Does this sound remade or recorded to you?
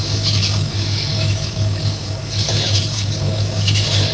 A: remade